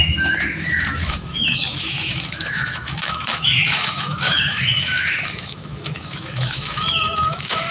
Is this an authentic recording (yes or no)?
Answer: no